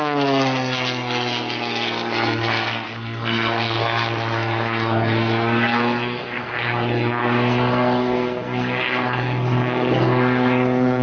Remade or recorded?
remade